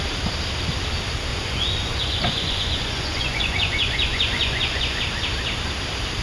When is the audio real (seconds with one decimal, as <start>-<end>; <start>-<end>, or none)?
0.0-1.3; 5.0-6.2

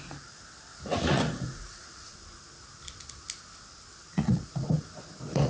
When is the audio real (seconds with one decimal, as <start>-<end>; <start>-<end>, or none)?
0.0-0.7; 2.2-4.0

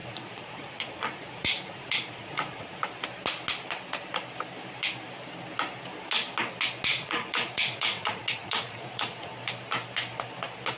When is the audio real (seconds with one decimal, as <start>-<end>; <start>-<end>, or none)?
2.8-6.9; 9.3-10.8

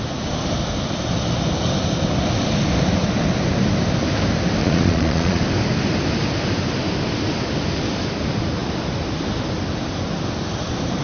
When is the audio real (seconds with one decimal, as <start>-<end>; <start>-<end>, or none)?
0.0-4.6; 5.4-11.0

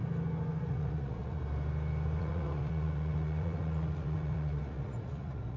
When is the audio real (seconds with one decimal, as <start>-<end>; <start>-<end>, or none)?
0.0-0.6; 1.4-2.2

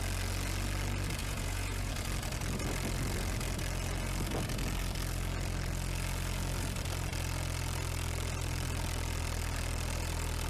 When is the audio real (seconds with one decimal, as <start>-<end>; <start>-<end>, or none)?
0.0-1.2; 1.9-10.5

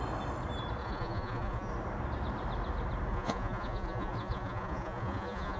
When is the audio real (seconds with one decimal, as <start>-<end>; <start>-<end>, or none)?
0.0-0.8; 1.7-3.1